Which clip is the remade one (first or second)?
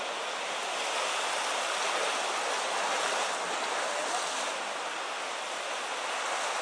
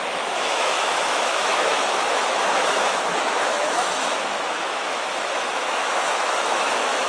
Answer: second